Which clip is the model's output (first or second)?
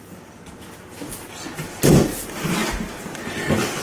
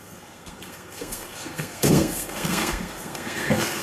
second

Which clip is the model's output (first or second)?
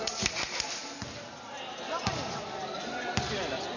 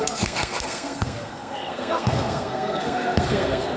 second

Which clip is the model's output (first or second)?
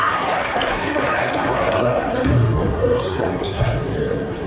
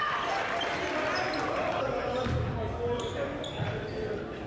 first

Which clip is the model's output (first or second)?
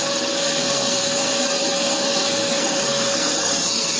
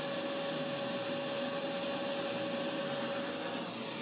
first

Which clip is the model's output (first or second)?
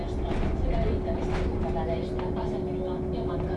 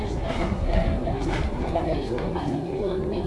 second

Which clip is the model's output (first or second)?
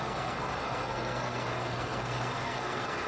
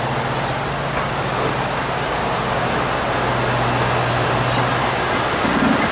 first